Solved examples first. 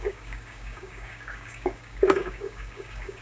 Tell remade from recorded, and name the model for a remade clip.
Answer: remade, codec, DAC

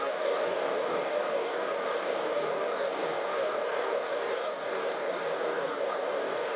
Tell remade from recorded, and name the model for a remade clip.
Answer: remade, codec, DAC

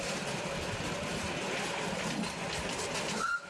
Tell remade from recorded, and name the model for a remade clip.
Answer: recorded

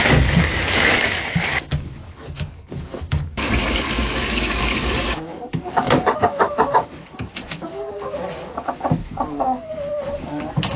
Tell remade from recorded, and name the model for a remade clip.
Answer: remade, codec, DAC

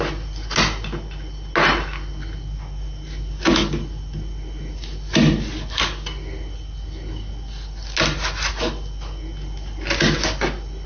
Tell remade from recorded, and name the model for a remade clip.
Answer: recorded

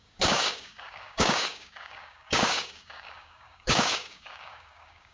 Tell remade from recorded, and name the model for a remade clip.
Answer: remade, codec, DAC